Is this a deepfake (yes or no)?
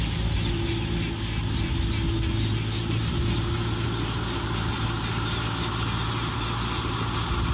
no